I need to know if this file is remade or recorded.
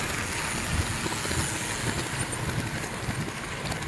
recorded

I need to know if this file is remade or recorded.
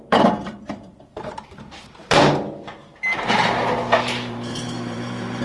remade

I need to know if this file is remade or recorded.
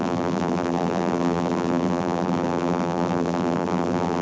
remade